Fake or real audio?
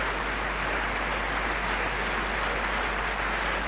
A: real